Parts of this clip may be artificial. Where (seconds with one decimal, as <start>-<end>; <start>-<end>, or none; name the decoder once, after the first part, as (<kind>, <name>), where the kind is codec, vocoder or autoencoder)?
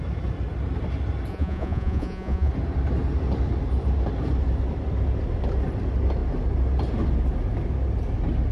1.3-2.5 (vocoder, Vocos)